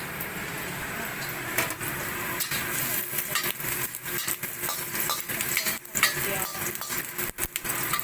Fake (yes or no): no